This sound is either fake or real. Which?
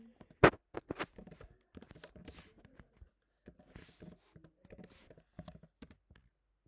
real